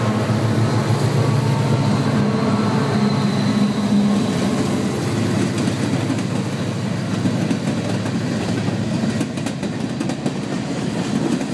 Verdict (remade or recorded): recorded